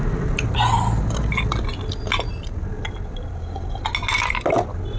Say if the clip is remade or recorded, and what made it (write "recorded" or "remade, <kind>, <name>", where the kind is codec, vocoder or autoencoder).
recorded